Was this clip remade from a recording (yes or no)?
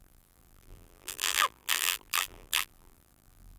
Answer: yes